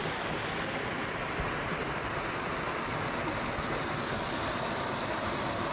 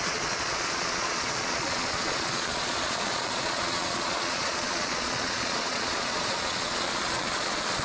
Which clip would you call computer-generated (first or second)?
second